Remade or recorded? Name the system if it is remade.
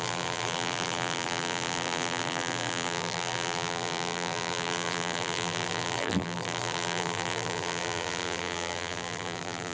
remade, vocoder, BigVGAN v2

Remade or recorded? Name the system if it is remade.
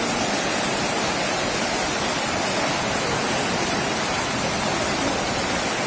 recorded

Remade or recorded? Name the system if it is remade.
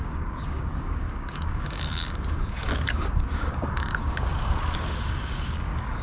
remade, codec, DAC